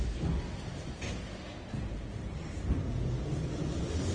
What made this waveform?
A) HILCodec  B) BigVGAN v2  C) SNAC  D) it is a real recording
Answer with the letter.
D